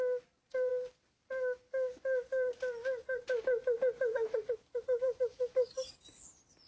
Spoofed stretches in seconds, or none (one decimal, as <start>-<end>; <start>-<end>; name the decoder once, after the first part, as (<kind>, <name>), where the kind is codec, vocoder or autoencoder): none